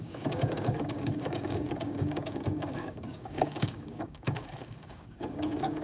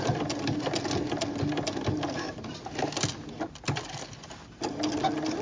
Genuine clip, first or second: second